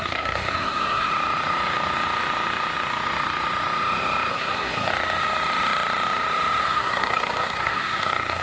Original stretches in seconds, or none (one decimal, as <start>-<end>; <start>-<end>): 1.1-4.3; 4.9-6.6